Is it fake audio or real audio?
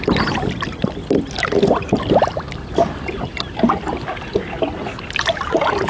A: real